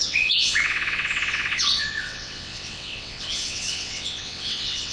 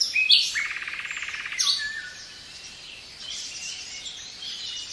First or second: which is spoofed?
first